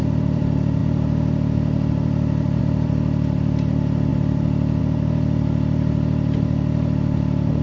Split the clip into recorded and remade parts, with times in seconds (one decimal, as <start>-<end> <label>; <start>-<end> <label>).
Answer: 0.0-7.6 recorded